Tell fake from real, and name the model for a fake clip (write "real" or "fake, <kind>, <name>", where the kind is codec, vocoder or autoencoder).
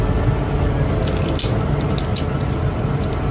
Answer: real